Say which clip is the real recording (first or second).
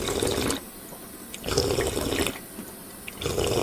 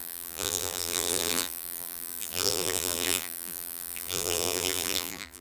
first